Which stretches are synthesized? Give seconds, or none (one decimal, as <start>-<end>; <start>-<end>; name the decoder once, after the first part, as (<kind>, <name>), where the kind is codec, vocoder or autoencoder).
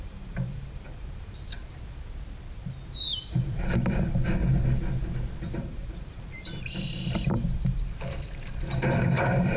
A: 0.0-1.6 (vocoder, BigVGAN v2); 3.0-4.4; 5.4-9.6